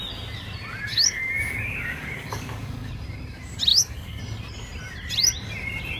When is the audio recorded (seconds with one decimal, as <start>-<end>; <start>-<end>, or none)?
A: 0.0-0.9; 2.9-3.7; 4.2-6.0